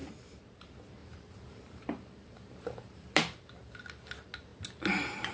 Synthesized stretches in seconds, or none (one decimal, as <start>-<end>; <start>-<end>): 1.0-3.8